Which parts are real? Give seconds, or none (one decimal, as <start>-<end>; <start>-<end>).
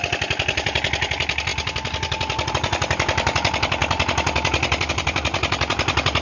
1.5-2.5; 3.8-4.9